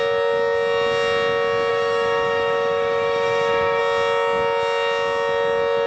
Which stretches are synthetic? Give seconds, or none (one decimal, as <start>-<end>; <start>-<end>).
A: 1.7-3.8